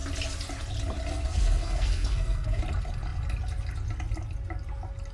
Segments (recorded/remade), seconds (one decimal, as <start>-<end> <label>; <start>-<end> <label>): 0.0-1.1 recorded; 1.1-2.6 remade; 2.6-5.1 recorded